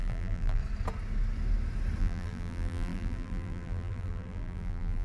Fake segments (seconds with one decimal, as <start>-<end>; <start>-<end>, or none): 0.0-0.6; 2.0-5.0